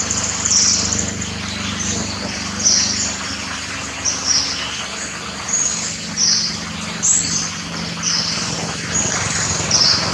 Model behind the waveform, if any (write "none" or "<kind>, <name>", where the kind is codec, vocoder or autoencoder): none